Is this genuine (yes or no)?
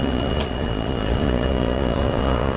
no